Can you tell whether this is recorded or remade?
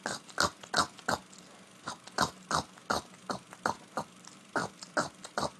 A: recorded